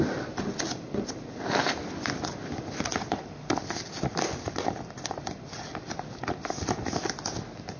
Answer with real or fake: real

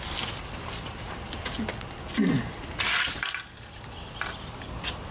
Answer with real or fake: real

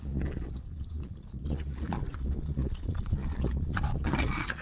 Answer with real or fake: fake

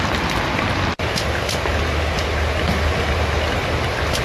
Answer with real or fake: real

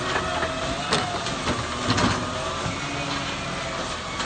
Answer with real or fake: real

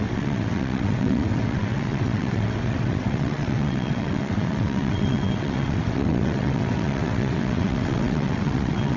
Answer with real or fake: fake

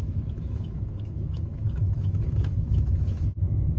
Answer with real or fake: fake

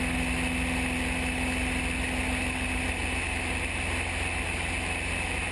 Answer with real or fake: real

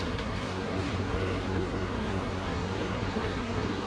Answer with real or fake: fake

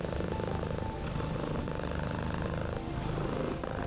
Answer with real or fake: real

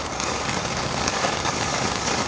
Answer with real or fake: fake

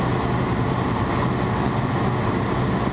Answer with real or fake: real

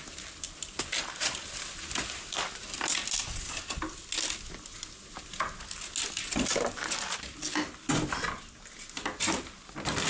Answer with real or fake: real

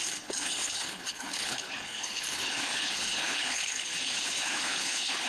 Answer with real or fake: fake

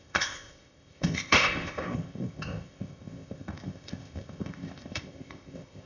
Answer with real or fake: fake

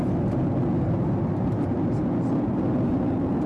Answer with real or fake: real